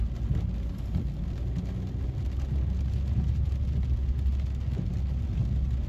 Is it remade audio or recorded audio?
recorded